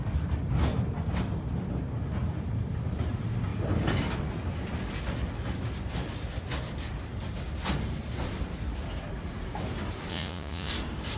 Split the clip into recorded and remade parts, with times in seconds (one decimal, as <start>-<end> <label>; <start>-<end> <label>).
0.0-10.1 recorded; 10.1-10.7 remade; 10.7-11.2 recorded